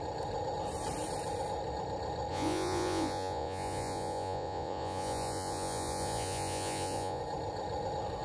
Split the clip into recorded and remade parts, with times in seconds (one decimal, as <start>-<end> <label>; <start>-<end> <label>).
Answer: 0.0-2.3 recorded; 2.3-7.2 remade; 7.2-8.2 recorded